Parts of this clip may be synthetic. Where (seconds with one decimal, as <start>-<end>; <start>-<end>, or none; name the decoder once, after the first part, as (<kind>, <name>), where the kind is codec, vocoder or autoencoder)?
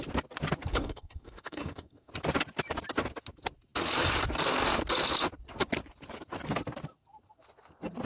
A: 0.7-2.1 (codec, SNAC)